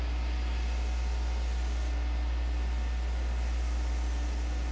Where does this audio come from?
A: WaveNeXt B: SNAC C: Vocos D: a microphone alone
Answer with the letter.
D